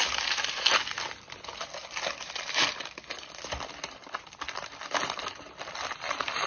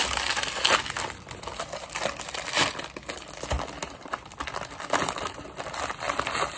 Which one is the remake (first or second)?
first